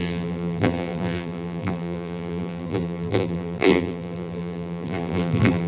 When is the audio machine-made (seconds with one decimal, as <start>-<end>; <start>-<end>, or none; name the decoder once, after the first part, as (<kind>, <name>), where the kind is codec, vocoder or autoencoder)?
0.0-5.7 (vocoder, BigVGAN v2)